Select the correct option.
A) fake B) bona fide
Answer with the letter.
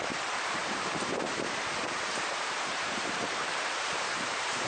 A